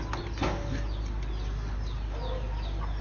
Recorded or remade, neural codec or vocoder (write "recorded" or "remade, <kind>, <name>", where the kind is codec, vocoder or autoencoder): recorded